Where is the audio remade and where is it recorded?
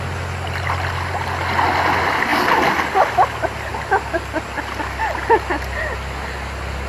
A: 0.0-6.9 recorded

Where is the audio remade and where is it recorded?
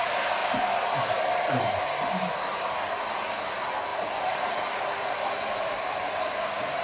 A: 0.0-6.8 recorded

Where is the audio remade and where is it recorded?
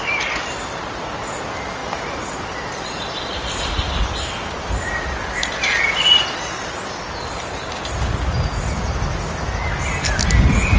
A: 0.0-10.8 recorded